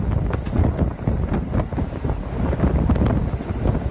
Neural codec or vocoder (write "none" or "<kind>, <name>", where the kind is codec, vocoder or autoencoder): none